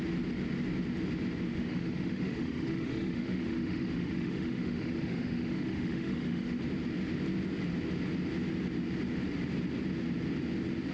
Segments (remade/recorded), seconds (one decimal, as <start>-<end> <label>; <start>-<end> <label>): 0.0-1.5 recorded; 1.5-6.6 remade; 6.6-10.9 recorded

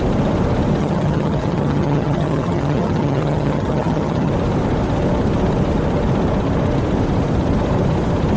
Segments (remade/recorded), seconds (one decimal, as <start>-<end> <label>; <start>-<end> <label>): 0.0-0.8 recorded; 0.8-4.3 remade; 4.3-8.4 recorded